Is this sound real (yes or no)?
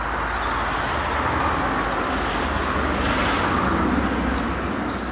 yes